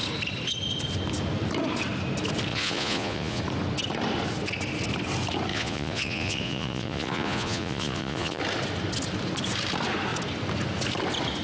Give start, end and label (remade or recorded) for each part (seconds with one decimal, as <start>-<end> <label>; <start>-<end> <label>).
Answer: 0.0-2.5 recorded; 2.5-3.4 remade; 3.4-5.5 recorded; 5.5-8.4 remade; 8.4-11.4 recorded

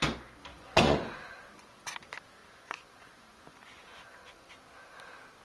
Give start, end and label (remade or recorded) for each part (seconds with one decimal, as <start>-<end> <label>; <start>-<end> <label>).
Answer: 0.0-0.5 recorded; 0.5-1.9 remade; 1.9-2.4 recorded; 2.4-4.5 remade; 4.5-5.4 recorded

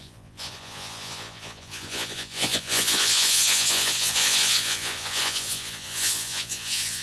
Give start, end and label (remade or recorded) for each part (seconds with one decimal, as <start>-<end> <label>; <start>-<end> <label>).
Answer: 0.0-7.0 remade

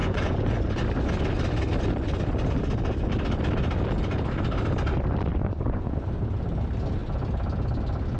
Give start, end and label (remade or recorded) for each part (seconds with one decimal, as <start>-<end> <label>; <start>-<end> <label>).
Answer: 0.0-0.7 remade; 0.7-5.3 recorded; 5.3-5.9 remade; 5.9-8.2 recorded